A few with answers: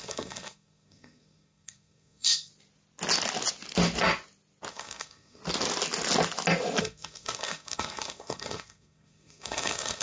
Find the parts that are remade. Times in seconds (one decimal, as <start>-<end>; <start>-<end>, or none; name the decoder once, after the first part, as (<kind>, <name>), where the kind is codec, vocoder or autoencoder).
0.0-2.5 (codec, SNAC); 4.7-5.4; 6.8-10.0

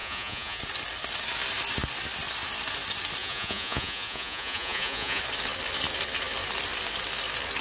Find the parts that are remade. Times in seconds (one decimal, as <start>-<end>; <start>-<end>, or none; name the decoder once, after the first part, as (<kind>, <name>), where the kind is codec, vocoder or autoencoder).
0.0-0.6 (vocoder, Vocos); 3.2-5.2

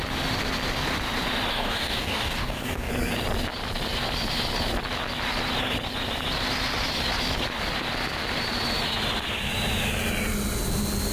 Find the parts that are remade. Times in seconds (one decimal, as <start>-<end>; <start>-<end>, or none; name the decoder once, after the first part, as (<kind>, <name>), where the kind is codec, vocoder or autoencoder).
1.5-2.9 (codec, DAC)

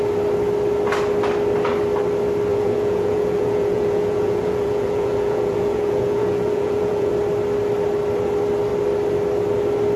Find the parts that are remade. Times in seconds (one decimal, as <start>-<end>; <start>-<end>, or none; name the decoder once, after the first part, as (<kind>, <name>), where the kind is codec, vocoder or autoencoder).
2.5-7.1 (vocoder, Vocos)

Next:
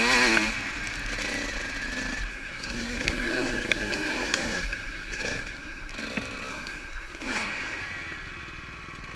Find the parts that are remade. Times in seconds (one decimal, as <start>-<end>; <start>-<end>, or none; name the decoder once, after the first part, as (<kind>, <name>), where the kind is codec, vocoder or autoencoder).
2.3-5.9 (codec, SNAC); 6.5-7.8

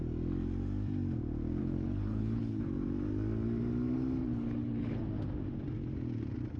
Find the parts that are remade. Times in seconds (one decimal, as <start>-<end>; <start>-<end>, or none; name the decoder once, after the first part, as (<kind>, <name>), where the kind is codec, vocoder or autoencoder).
1.6-2.6 (codec, HILCodec); 4.2-5.0

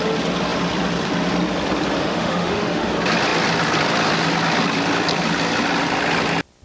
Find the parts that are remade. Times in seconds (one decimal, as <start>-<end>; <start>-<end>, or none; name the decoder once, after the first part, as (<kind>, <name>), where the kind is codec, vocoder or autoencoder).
2.0-2.9 (autoencoder, DAC-VAE)

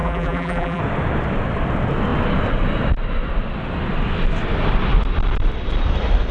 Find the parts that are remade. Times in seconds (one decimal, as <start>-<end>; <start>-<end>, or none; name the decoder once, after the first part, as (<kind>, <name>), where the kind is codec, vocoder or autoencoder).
0.0-0.8 (vocoder, BigVGAN v2)